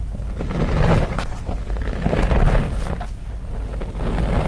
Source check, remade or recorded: recorded